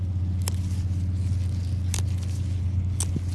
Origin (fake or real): real